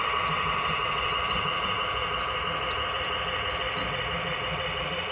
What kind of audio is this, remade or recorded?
remade